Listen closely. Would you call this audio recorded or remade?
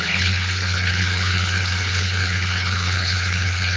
remade